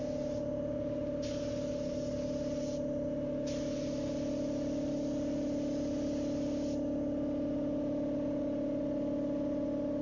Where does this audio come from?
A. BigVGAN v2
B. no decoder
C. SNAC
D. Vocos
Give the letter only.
B